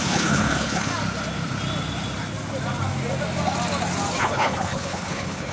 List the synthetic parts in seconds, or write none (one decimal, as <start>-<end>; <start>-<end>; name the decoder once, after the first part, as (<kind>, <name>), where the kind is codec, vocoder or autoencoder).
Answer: 0.0-0.9 (codec, HILCodec); 4.2-5.5